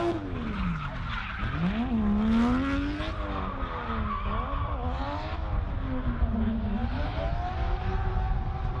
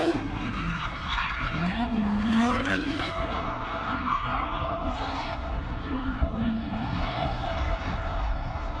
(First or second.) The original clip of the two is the first